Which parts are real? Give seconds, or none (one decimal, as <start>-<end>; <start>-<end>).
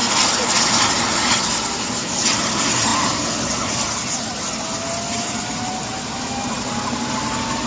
0.0-7.7